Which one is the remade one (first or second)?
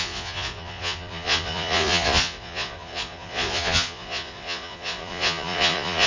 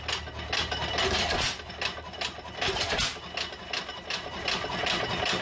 first